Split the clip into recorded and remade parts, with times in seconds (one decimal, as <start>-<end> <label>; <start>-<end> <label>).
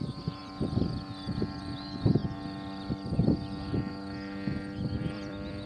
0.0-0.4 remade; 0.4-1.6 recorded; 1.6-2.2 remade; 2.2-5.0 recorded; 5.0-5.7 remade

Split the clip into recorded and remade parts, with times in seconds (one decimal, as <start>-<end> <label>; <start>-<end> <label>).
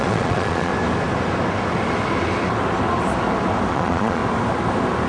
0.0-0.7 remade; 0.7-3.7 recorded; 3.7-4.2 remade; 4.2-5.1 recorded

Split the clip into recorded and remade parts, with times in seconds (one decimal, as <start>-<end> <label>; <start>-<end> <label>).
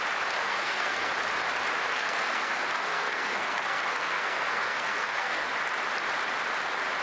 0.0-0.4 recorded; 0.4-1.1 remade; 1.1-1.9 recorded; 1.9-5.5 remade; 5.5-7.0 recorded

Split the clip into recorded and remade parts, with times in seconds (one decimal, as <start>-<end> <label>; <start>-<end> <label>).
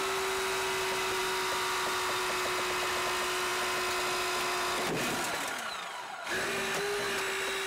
0.0-7.7 recorded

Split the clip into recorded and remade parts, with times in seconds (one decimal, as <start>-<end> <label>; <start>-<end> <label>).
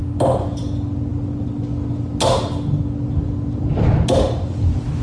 0.0-5.0 recorded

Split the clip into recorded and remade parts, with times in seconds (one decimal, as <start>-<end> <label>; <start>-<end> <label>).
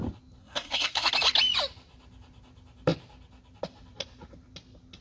0.0-0.4 recorded; 0.4-1.1 remade; 1.1-5.0 recorded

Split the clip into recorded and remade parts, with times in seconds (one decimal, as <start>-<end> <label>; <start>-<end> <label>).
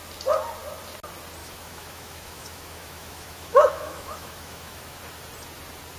0.0-1.4 recorded; 1.4-5.0 remade; 5.0-6.0 recorded